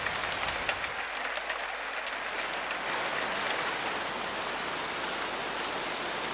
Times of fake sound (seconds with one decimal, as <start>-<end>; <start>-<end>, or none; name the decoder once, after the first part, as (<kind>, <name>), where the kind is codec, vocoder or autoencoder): none